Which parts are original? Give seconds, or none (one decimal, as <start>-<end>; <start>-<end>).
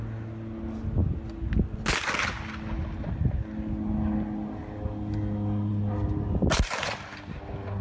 0.0-7.8